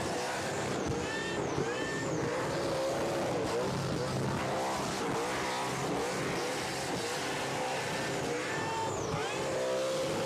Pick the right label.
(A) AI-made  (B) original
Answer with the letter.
B